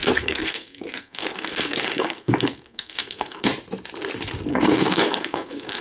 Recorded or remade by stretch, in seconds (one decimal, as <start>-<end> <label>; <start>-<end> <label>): 0.0-3.5 remade; 3.5-4.5 recorded; 4.5-5.8 remade